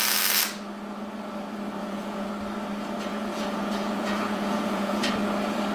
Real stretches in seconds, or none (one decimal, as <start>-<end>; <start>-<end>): 0.0-1.8; 2.3-3.1; 5.1-5.7